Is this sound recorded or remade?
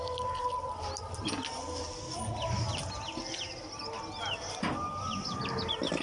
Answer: recorded